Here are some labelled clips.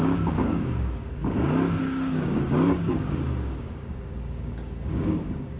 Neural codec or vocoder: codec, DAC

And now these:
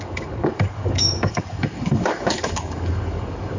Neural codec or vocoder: codec, DAC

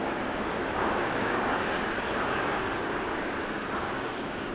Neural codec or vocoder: codec, DAC